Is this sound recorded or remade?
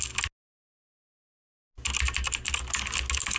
recorded